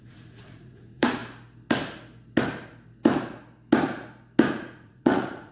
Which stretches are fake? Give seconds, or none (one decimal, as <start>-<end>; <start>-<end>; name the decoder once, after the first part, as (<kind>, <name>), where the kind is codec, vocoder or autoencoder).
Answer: 0.0-1.2 (vocoder, Vocos); 4.5-5.5